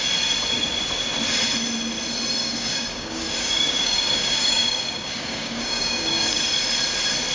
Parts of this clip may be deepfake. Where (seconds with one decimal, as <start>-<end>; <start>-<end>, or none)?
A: 2.4-6.4